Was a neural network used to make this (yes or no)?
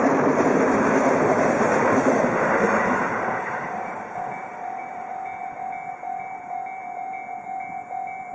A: no